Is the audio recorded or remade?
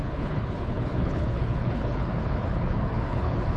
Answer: remade